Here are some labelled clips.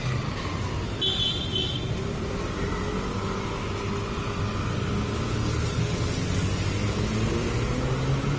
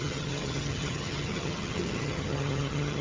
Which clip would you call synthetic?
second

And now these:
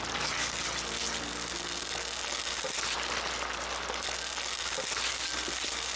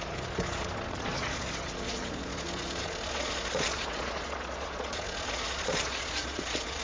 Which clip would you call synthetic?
second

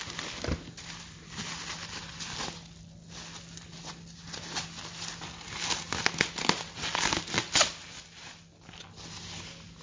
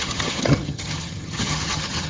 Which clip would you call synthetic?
second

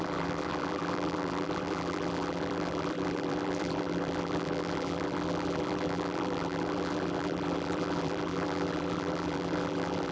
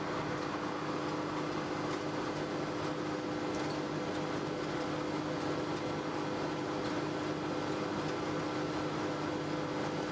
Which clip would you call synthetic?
first